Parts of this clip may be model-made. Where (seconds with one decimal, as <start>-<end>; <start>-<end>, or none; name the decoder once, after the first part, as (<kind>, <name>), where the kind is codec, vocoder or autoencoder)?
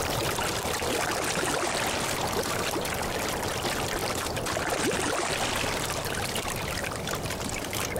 none